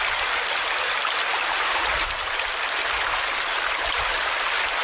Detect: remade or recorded recorded